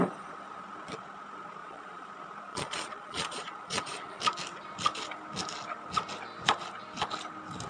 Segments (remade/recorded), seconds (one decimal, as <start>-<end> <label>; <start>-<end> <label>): 0.0-1.6 recorded; 1.6-2.1 remade; 2.1-2.5 recorded; 2.5-4.2 remade; 4.2-7.7 recorded